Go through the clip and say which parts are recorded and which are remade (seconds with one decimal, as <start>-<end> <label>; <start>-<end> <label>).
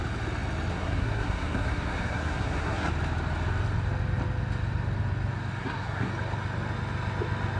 0.0-0.7 recorded; 0.7-2.9 remade; 2.9-5.6 recorded; 5.6-6.1 remade; 6.1-7.6 recorded